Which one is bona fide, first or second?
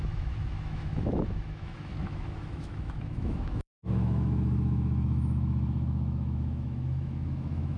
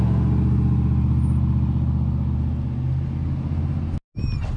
second